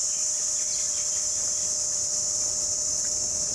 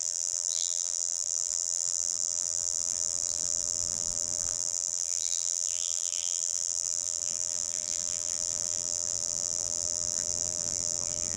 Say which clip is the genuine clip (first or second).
first